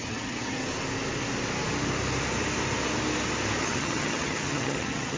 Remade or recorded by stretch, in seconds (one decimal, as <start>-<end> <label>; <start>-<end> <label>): 0.0-0.6 remade; 0.6-3.6 recorded; 3.6-5.2 remade